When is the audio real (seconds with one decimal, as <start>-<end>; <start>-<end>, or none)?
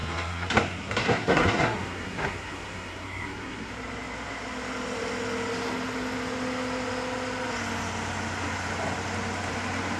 3.7-10.0